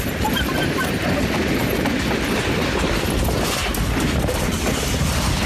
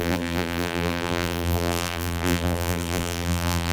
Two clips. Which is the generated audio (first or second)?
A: second